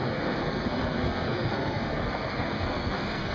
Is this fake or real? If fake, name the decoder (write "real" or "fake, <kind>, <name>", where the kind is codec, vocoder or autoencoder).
fake, codec, SNAC